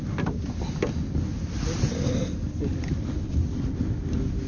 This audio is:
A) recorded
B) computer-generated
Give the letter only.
A